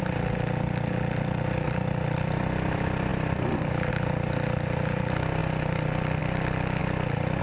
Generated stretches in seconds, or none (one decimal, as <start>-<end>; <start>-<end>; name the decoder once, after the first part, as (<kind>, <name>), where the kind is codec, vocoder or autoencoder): none